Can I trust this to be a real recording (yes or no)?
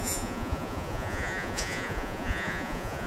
no